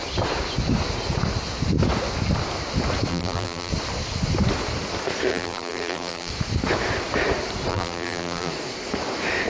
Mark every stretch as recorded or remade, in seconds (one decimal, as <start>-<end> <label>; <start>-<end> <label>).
0.0-3.1 recorded; 3.1-3.7 remade; 3.7-5.3 recorded; 5.3-6.3 remade; 6.3-7.7 recorded; 7.7-8.5 remade; 8.5-9.5 recorded